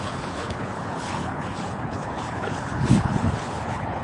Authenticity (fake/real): fake